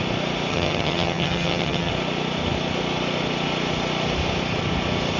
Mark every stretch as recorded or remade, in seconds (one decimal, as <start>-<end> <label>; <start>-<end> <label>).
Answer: 0.0-0.5 recorded; 0.5-1.9 remade; 1.9-5.2 recorded